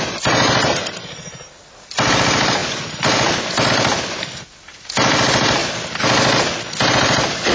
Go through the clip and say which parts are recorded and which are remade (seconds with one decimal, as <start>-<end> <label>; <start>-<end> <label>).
0.0-5.6 remade; 5.6-6.9 recorded; 6.9-7.5 remade